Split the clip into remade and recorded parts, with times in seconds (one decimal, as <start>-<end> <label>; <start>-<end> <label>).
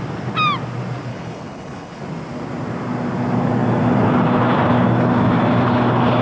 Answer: 0.0-1.1 recorded; 1.1-2.0 remade; 2.0-6.2 recorded